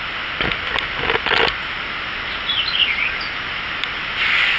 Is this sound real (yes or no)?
yes